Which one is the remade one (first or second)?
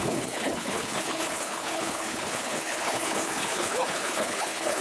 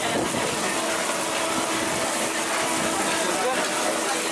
first